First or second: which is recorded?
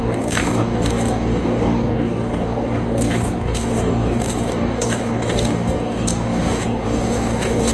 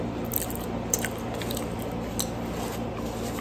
second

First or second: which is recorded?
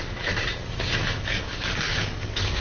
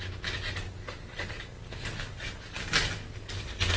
second